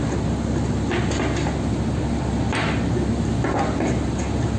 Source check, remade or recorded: recorded